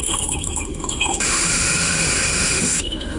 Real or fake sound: fake